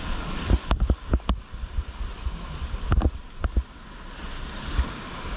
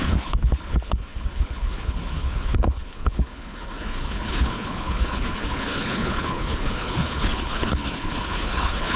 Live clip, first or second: first